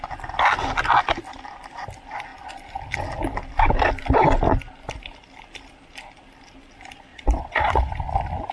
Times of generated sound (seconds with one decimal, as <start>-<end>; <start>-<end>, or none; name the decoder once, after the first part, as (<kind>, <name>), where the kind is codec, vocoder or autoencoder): 7.1-7.9 (vocoder, Vocos)